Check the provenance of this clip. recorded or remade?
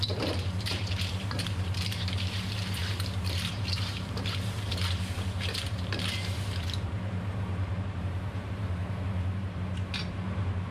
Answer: remade